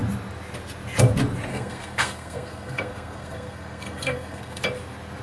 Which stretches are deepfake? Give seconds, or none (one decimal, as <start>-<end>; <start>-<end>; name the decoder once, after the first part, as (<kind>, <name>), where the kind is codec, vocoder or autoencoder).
1.5-4.6 (codec, SNAC)